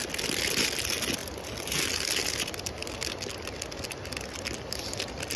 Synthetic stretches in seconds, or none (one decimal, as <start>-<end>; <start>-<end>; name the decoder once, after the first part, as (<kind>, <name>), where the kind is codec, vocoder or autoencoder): none